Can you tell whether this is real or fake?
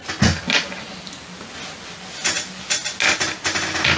real